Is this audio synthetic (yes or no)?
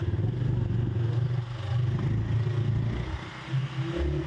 no